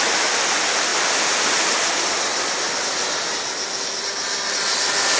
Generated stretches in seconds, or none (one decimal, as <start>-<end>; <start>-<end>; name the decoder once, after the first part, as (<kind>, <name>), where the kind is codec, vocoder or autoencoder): none